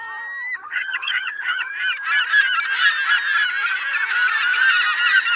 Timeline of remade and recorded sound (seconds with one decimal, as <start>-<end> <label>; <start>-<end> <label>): 0.0-0.6 recorded; 0.6-1.7 remade; 1.7-5.4 recorded